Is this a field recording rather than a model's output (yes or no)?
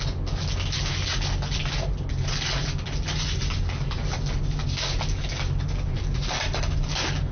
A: yes